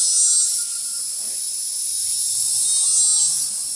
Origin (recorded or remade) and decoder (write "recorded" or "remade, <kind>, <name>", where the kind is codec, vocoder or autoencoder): recorded